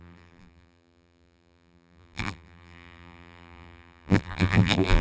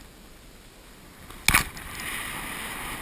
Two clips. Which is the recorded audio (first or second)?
second